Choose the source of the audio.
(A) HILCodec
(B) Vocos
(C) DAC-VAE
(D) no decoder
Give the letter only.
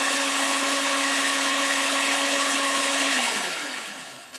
A